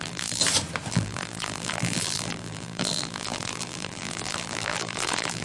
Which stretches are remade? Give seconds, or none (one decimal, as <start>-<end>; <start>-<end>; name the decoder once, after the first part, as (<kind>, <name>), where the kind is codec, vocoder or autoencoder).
0.0-0.4 (vocoder, BigVGAN v2); 0.9-5.4